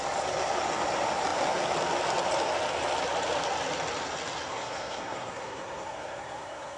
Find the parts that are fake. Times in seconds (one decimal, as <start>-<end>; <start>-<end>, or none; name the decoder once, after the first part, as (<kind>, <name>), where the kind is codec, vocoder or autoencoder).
4.5-6.8 (codec, SNAC)